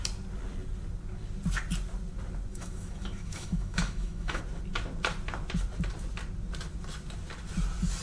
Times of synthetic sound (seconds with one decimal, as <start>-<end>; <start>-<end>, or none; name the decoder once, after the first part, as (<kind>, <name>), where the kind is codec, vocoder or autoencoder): 2.5-4.4 (autoencoder, DAC-VAE)